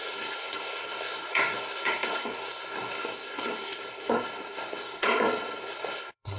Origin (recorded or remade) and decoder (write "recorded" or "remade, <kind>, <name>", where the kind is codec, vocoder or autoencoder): remade, codec, SNAC